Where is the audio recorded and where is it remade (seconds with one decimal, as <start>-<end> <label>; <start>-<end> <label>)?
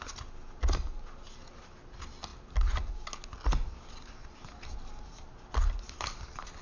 0.0-6.6 recorded